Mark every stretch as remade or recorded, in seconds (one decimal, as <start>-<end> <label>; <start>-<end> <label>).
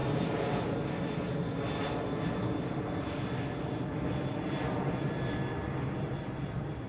0.0-6.9 recorded